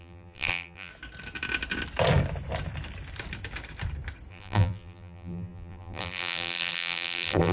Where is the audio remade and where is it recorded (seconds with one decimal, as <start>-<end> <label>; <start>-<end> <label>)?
0.0-0.9 remade; 0.9-4.3 recorded; 4.3-7.5 remade